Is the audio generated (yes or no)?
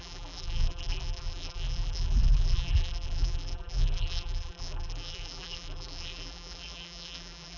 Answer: yes